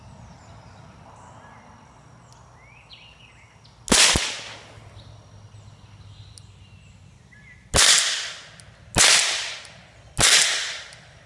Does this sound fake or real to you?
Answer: real